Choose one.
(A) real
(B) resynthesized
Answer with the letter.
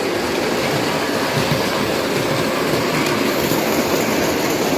A